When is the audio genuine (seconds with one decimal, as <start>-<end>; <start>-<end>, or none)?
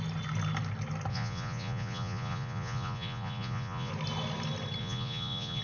0.0-1.1; 3.9-4.8